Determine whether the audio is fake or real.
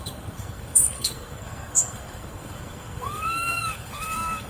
fake